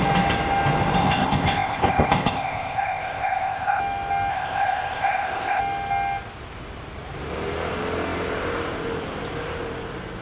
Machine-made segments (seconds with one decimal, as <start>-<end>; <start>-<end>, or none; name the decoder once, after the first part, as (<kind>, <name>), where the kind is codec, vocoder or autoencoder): 1.0-3.8 (codec, ZipCodec); 4.3-5.6